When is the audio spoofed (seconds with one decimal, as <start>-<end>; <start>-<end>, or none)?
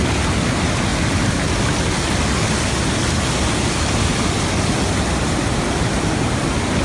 none